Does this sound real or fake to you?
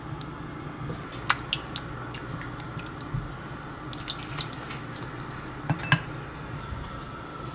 real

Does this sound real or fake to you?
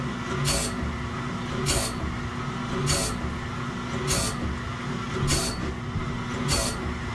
real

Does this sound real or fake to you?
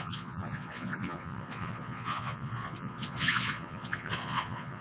fake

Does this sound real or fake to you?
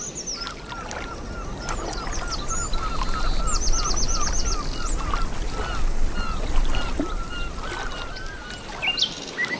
real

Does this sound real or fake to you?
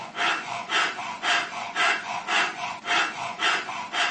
fake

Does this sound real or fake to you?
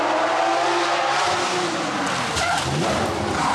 real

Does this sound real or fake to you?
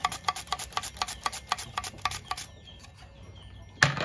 real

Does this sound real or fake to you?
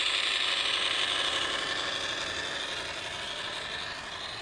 real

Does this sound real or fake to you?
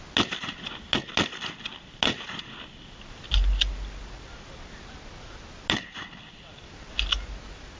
real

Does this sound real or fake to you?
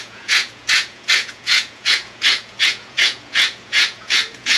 fake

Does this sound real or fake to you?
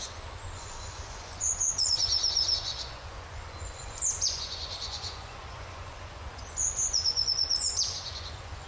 fake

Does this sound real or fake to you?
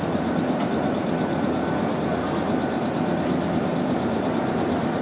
real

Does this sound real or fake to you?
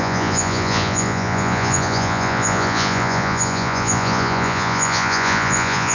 fake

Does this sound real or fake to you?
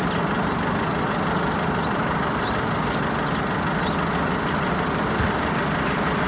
real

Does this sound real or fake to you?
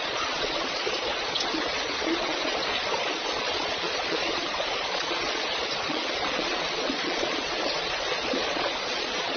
fake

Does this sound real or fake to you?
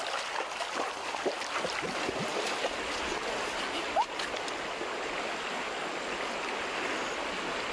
real